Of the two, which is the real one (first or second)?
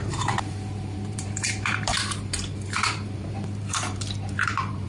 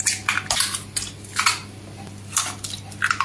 second